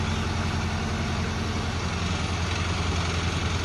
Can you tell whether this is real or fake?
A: real